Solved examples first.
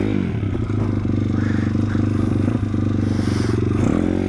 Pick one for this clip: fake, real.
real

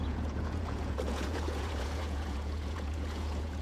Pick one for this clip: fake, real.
fake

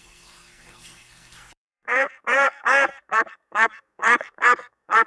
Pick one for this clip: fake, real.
fake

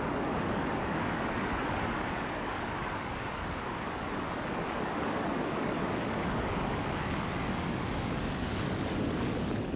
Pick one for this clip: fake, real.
fake